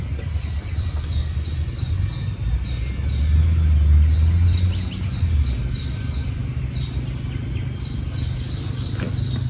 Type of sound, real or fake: real